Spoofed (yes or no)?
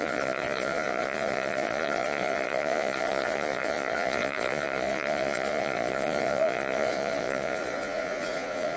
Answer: yes